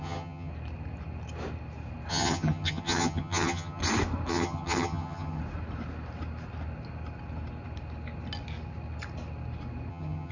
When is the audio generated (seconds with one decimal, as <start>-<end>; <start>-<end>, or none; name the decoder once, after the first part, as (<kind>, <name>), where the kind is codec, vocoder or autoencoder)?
0.0-0.5 (vocoder, HiFi-GAN); 2.1-3.8; 4.3-5.4; 9.9-10.3